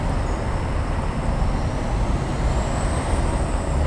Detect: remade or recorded recorded